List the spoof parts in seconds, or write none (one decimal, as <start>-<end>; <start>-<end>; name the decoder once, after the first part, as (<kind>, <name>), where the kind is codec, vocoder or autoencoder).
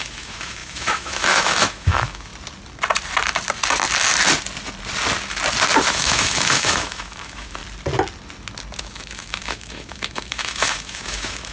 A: 0.0-2.3 (autoencoder, DAC-VAE); 5.9-7.6; 8.8-11.5